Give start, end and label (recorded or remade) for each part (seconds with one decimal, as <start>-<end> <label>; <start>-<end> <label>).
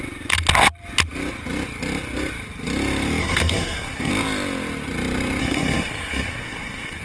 0.0-3.2 recorded; 3.2-4.1 remade; 4.1-5.4 recorded; 5.4-7.0 remade